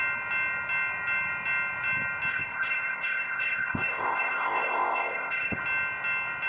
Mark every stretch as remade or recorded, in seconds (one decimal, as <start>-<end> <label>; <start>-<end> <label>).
0.0-2.3 recorded; 2.3-5.6 remade; 5.6-6.5 recorded